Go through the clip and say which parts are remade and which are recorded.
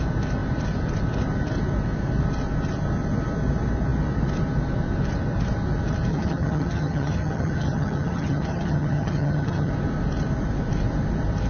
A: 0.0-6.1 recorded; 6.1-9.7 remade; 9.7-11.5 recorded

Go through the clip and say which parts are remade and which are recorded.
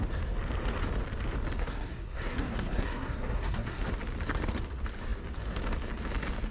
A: 0.0-1.6 recorded; 1.6-3.9 remade; 3.9-6.5 recorded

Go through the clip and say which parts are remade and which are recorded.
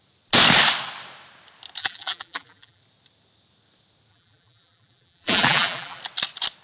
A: 0.0-1.8 recorded; 1.8-2.8 remade; 2.8-4.1 recorded; 4.1-6.0 remade; 6.0-6.6 recorded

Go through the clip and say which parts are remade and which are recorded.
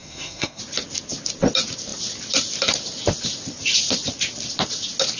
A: 0.0-0.6 remade; 0.6-5.2 recorded